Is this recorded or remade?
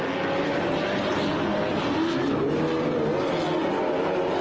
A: recorded